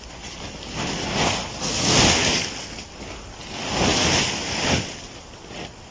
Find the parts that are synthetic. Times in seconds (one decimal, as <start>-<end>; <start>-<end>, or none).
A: none